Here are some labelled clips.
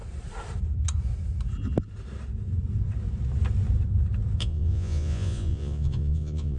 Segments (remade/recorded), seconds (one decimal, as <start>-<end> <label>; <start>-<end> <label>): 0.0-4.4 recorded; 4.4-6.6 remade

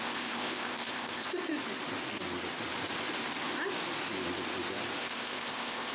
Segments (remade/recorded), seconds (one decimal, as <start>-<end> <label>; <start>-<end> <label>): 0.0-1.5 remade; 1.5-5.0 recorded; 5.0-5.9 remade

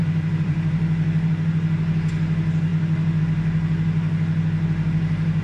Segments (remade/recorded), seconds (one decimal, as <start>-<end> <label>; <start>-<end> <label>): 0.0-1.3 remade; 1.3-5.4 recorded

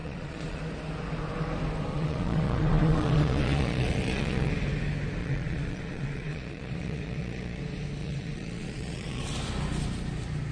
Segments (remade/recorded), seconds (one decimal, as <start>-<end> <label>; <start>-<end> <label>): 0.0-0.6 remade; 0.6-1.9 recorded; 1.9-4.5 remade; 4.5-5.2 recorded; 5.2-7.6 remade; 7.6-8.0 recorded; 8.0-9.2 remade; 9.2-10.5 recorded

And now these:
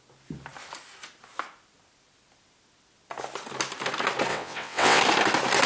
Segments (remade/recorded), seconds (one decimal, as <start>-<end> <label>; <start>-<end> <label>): 0.0-4.3 recorded; 4.3-5.0 remade; 5.0-5.7 recorded

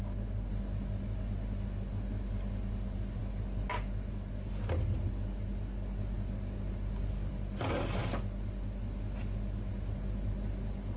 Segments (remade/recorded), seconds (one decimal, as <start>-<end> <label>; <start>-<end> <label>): 0.0-11.0 recorded